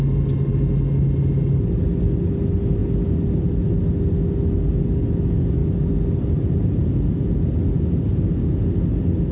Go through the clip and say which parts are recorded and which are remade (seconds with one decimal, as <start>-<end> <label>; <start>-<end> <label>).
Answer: 0.0-9.3 recorded

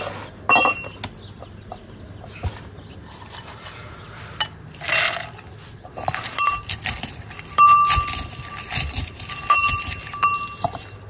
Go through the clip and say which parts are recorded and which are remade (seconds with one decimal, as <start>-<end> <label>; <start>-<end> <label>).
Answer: 0.0-11.1 recorded

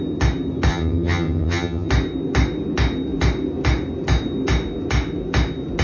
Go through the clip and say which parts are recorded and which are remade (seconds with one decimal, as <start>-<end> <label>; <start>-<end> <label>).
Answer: 0.0-0.7 recorded; 0.7-1.9 remade; 1.9-5.8 recorded

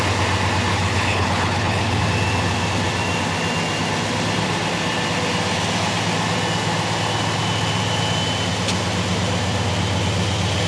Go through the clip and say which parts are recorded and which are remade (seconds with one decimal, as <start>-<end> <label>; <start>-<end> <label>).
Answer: 0.0-0.7 recorded; 0.7-2.0 remade; 2.0-10.7 recorded

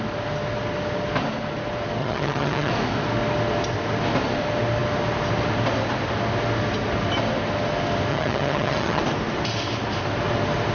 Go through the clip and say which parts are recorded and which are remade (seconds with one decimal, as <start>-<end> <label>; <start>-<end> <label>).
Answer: 0.0-2.0 recorded; 2.0-2.7 remade; 2.7-8.1 recorded; 8.1-9.0 remade; 9.0-10.7 recorded

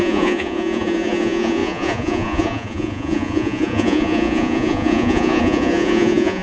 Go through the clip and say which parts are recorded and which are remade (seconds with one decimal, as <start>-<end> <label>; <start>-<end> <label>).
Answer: 0.0-6.4 remade

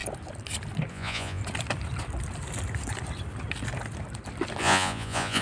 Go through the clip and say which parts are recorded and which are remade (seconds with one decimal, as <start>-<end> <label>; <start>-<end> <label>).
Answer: 0.0-0.9 recorded; 0.9-1.4 remade; 1.4-4.6 recorded; 4.6-5.4 remade

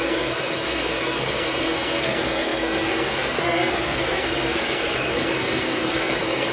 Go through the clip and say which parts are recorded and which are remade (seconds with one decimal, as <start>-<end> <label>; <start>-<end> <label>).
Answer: 0.0-6.5 remade